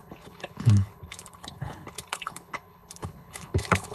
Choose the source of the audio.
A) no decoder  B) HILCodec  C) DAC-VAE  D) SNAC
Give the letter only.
B